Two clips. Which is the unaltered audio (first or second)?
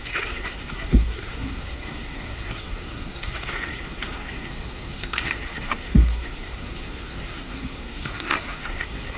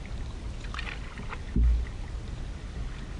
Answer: second